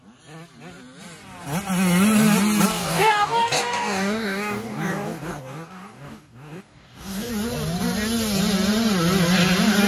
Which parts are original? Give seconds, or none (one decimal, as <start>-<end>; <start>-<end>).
0.0-2.7; 7.3-9.9